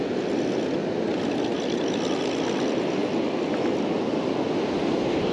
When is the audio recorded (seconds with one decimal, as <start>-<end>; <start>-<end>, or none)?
0.0-5.3